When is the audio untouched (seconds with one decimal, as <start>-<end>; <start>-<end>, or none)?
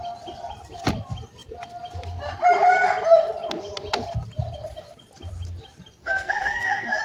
0.0-6.0